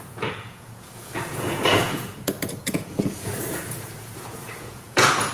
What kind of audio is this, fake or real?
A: fake